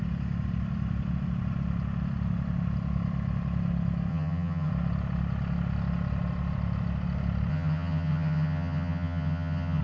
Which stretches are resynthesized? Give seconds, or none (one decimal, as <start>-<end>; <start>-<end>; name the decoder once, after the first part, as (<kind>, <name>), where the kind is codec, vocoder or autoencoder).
4.1-4.7 (vocoder, HiFi-GAN); 7.5-9.8